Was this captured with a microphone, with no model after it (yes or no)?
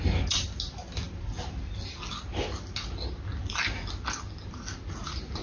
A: yes